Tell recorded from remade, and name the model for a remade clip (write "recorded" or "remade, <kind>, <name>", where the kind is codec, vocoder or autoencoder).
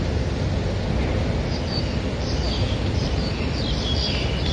recorded